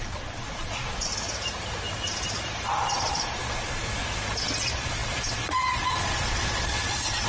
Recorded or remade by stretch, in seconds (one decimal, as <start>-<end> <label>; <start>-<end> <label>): 0.0-1.1 remade; 1.1-2.7 recorded; 2.7-4.0 remade; 4.0-4.6 recorded; 4.6-7.3 remade